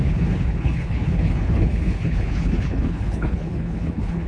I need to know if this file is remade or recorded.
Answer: remade